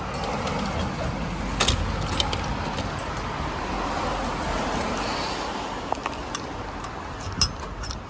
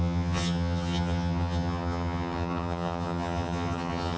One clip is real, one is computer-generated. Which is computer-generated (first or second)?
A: second